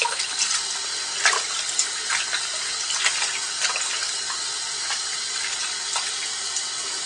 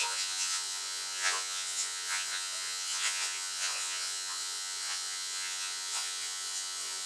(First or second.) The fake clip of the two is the second